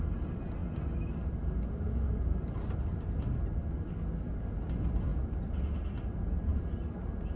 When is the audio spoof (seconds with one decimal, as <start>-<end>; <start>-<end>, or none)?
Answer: none

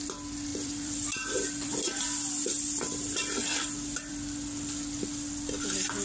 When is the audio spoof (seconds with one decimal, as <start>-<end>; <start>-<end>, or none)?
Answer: 0.5-4.1